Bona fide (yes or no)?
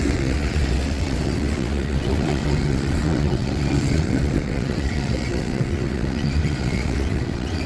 no